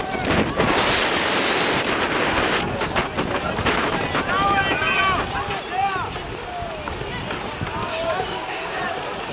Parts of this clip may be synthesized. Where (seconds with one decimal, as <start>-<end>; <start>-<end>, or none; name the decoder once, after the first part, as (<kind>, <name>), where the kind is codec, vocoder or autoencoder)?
7.8-8.8 (codec, DAC)